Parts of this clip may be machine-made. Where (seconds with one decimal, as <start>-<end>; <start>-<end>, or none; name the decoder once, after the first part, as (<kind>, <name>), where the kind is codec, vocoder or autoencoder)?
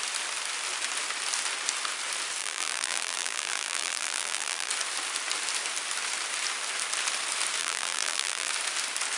2.4-4.7 (vocoder, BigVGAN v2); 7.6-8.5